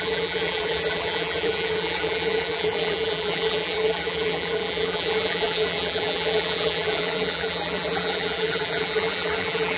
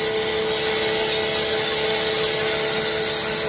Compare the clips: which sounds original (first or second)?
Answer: second